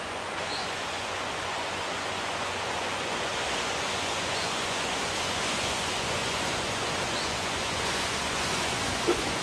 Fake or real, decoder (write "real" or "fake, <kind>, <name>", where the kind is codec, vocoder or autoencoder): fake, vocoder, Vocos